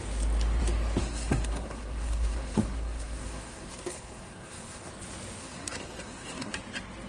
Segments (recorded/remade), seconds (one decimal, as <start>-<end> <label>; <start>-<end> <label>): 0.0-1.0 recorded; 1.0-4.9 remade; 4.9-5.4 recorded; 5.4-6.5 remade; 6.5-7.1 recorded